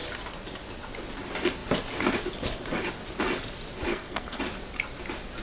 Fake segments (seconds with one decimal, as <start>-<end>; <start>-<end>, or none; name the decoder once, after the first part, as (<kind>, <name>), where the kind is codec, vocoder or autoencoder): 3.9-4.4 (codec, SNAC)